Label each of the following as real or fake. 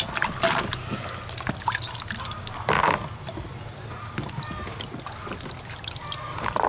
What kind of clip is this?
real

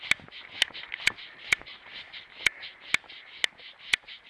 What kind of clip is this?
real